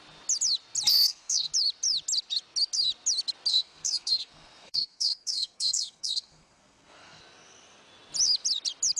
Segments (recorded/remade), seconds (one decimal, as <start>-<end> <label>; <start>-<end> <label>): 0.0-0.9 recorded; 0.9-1.5 remade; 1.5-3.5 recorded; 3.5-7.2 remade; 7.2-9.0 recorded